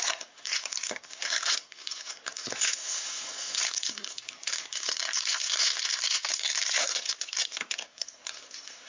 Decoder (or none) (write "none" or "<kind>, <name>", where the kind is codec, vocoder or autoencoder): codec, SNAC